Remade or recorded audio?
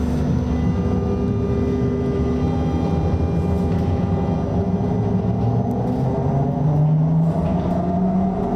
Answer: recorded